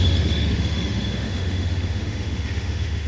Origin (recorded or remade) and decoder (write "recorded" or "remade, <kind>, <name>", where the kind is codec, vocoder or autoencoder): remade, autoencoder, DAC-VAE